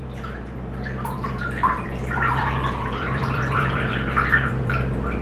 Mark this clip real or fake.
fake